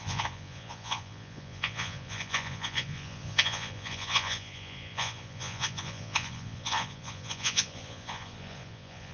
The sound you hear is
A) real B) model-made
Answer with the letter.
B